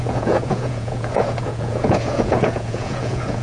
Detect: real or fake fake